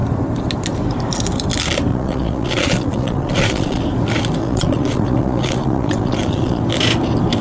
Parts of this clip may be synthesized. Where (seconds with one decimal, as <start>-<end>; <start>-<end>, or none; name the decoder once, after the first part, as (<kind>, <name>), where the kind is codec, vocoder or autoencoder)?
1.9-3.8 (vocoder, Vocos); 4.4-6.6